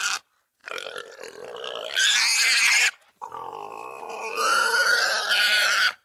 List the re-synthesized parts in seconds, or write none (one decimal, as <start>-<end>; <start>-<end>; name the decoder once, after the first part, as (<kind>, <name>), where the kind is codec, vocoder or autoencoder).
none